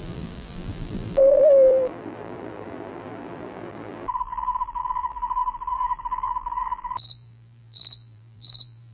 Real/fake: fake